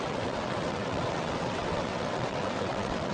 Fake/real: fake